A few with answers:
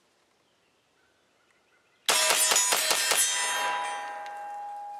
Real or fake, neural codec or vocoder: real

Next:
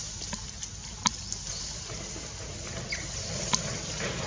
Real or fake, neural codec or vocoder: real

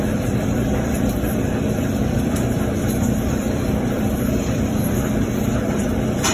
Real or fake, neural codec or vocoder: fake, vocoder, BigVGAN v2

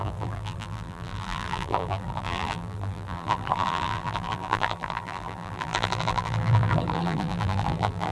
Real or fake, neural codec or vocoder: fake, vocoder, BigVGAN v2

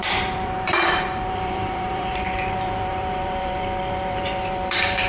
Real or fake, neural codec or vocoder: fake, vocoder, BigVGAN v2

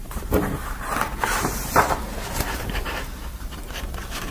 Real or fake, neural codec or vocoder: fake, vocoder, BigVGAN v2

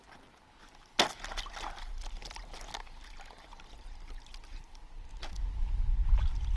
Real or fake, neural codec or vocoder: real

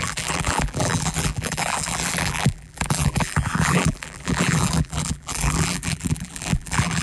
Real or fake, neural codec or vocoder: fake, vocoder, BigVGAN v2